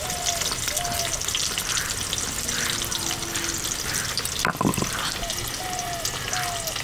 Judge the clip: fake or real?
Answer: real